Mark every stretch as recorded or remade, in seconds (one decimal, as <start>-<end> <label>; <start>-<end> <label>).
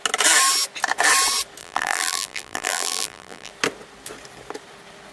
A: 0.0-1.6 recorded; 1.6-3.5 remade; 3.5-5.1 recorded